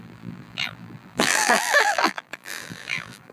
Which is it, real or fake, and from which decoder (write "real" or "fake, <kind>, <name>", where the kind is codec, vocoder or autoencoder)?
fake, vocoder, BigVGAN v2